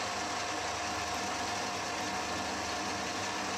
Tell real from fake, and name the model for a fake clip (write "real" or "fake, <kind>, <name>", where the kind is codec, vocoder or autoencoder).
real